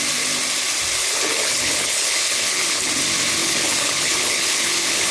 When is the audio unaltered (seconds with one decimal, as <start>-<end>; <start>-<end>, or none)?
0.0-1.0; 2.9-3.4